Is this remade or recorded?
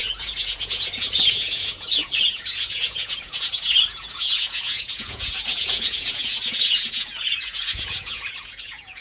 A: remade